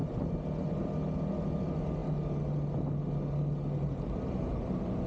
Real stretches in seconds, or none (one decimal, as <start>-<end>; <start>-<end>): 0.0-5.1